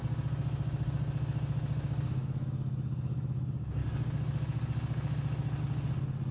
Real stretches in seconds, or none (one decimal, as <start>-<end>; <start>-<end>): 0.0-2.2; 3.4-6.3